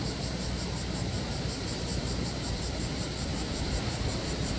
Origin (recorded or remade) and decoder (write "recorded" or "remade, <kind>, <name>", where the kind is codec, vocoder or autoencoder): remade, vocoder, BigVGAN v2